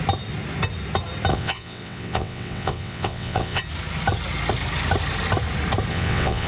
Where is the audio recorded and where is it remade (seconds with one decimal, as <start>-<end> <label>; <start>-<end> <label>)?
0.0-1.3 recorded; 1.3-3.6 remade; 3.6-5.9 recorded; 5.9-6.5 remade